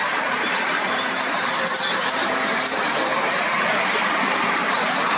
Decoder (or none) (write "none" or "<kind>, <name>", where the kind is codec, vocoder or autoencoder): vocoder, BigVGAN v2